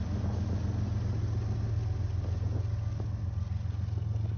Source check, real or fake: real